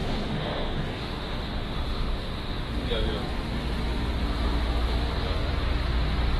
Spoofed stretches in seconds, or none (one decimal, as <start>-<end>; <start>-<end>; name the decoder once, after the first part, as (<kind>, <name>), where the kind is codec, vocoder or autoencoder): 0.0-2.7 (autoencoder, DAC-VAE)